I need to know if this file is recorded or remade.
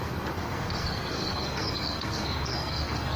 remade